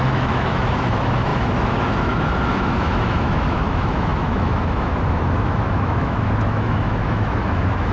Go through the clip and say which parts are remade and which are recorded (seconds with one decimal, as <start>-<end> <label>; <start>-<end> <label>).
0.0-7.9 remade